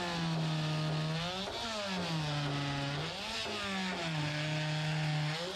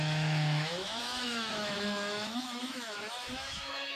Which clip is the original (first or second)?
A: first